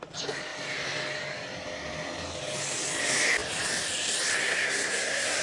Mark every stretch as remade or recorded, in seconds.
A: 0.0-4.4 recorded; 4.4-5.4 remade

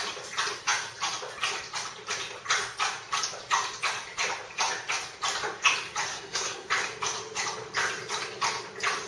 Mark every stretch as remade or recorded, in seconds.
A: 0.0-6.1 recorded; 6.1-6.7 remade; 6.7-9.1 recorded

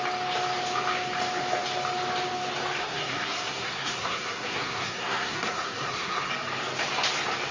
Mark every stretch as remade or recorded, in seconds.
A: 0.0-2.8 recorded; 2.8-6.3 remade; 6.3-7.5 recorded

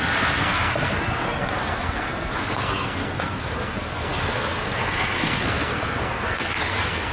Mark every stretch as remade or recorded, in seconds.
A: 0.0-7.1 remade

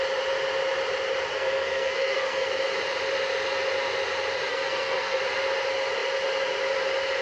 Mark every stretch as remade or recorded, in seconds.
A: 0.0-1.3 recorded; 1.3-2.6 remade; 2.6-4.5 recorded; 4.5-5.2 remade; 5.2-7.2 recorded